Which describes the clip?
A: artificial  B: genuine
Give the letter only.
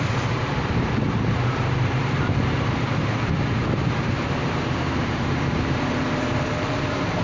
A